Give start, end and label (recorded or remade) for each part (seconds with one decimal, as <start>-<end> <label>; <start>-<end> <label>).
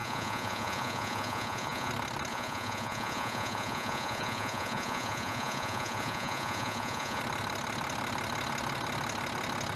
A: 0.0-1.9 remade; 1.9-2.3 recorded; 2.3-7.2 remade; 7.2-9.8 recorded